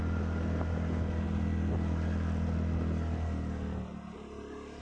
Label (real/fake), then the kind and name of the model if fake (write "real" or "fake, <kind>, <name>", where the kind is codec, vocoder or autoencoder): real